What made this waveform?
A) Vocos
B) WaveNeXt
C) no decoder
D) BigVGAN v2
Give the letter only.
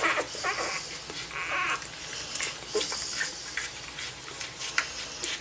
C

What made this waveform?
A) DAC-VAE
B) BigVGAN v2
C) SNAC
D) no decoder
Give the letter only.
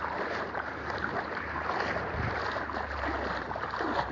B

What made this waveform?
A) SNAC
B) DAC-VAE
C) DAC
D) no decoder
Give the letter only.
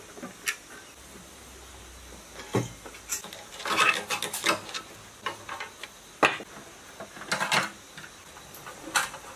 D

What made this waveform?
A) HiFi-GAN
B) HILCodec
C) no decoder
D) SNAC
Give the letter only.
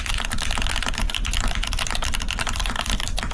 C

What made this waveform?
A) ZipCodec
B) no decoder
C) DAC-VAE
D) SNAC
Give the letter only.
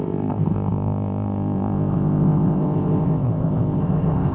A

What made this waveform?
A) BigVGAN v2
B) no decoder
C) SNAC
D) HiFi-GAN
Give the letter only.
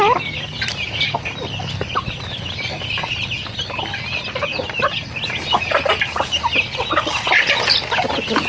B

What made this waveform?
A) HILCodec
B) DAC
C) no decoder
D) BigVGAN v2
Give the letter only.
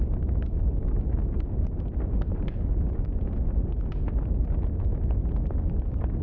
C